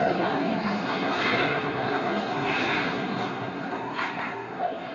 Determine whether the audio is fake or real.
fake